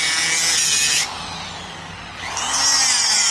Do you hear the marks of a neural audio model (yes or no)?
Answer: no